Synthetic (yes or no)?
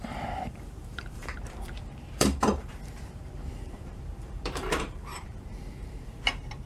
yes